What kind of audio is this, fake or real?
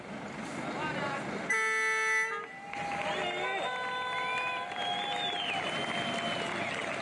real